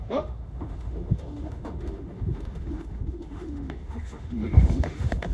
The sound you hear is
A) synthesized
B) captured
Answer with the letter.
A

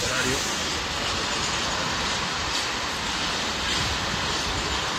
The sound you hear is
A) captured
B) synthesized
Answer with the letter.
A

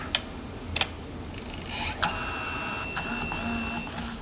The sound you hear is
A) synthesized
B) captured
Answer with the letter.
B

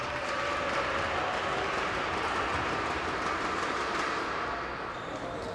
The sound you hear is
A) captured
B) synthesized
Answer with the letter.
A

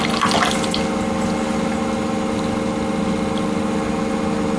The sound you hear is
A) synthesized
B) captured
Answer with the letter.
B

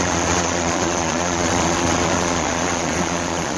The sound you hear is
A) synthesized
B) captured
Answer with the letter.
A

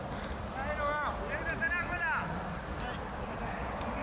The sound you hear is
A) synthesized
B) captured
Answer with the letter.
B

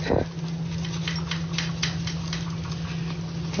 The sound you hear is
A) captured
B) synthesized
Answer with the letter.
A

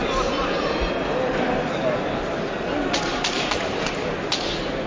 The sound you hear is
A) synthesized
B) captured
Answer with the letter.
B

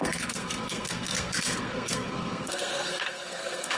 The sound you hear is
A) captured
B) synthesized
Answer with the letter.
B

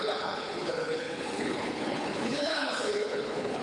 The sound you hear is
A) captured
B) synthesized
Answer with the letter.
B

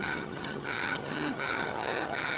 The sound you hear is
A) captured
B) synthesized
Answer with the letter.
B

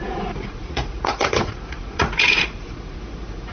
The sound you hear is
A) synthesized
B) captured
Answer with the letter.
A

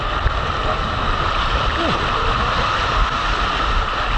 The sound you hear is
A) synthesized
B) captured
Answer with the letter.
B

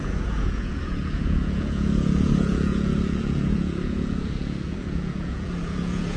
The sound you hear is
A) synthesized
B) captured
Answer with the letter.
A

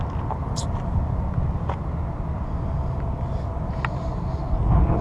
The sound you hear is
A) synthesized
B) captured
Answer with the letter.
B